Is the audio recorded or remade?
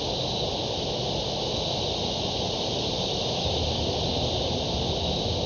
recorded